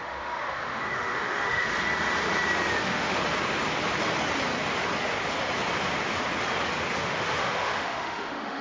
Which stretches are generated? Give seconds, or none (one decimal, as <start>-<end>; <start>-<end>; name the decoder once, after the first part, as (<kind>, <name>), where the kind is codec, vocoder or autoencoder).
0.0-1.7 (autoencoder, DAC-VAE); 2.8-3.2; 7.0-8.6